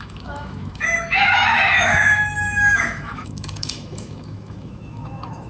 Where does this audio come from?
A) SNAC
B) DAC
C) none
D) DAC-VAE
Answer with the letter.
D